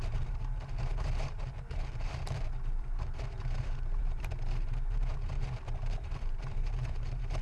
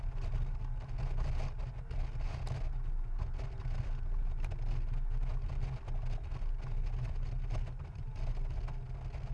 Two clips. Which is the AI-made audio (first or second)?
first